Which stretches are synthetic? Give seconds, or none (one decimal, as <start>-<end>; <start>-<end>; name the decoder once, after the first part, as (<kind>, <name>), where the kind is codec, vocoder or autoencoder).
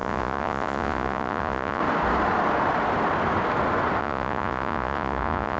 0.0-1.8 (vocoder, Vocos); 4.0-5.6